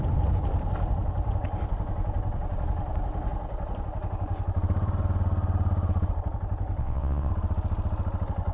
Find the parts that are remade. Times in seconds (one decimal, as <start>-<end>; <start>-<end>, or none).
6.8-7.3